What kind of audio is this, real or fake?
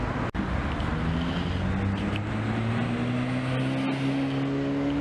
real